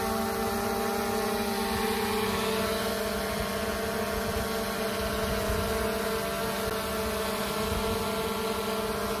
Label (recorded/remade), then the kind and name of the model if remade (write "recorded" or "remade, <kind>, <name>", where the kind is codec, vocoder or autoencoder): recorded